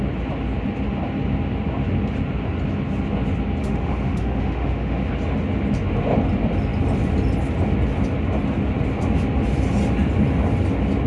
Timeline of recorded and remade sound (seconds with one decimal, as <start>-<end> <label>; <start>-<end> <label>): 0.0-3.6 recorded; 3.6-5.0 remade; 5.0-11.1 recorded